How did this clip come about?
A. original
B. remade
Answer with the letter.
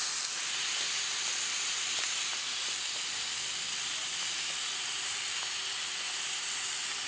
A